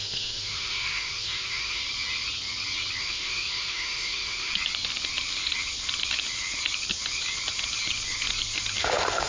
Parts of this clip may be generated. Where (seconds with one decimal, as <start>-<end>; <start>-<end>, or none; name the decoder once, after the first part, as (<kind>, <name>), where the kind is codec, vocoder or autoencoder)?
0.0-1.8 (autoencoder, DAC-VAE); 3.0-4.5; 8.8-9.3